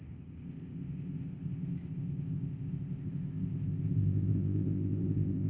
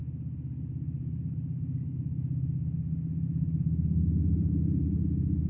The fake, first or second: first